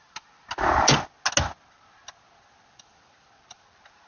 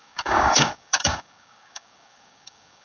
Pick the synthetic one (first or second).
second